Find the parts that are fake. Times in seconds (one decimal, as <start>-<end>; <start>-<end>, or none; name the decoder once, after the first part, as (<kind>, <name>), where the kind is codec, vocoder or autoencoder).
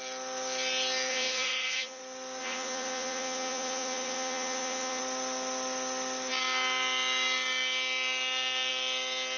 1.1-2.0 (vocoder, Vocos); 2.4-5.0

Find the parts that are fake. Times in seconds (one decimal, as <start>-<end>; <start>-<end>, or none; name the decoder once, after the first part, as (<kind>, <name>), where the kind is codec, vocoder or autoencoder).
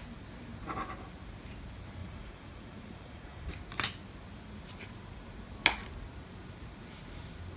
2.0-3.5 (vocoder, Vocos)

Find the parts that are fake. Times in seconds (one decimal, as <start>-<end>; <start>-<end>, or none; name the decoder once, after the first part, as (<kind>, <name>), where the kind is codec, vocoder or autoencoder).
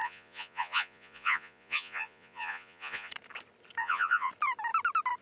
0.0-3.1 (vocoder, Vocos); 3.8-4.3